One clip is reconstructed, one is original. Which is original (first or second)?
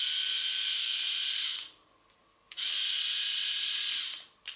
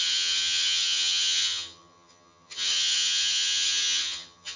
first